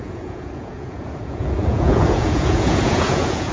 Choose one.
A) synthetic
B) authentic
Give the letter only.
A